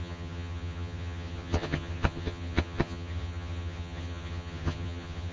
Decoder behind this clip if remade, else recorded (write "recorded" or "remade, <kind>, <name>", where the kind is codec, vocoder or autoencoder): remade, vocoder, HiFi-GAN